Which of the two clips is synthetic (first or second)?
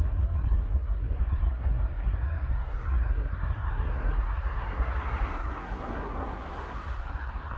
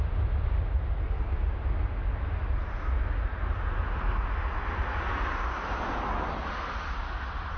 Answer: first